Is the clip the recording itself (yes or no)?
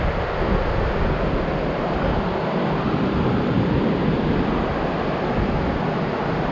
yes